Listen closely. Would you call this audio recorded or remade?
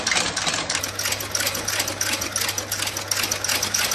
recorded